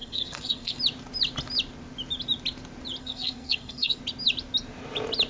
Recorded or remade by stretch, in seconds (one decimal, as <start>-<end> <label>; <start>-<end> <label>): 0.0-0.8 remade; 0.8-3.0 recorded; 3.0-4.0 remade; 4.0-5.3 recorded